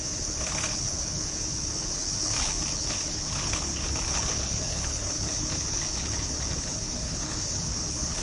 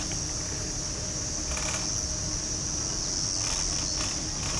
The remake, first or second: first